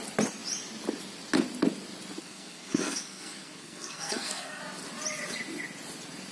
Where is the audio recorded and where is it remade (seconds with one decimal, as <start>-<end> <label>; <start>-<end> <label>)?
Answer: 0.0-2.2 recorded; 2.2-4.6 remade; 4.6-6.3 recorded